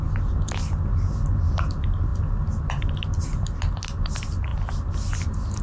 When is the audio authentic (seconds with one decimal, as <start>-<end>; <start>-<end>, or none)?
0.0-5.6